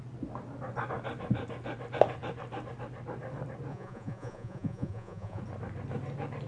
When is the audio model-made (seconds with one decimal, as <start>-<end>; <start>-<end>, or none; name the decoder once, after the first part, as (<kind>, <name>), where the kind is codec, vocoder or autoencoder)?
3.7-5.4 (vocoder, Vocos)